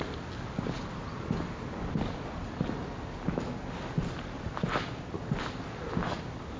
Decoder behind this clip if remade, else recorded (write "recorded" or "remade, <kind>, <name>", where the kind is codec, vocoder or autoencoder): recorded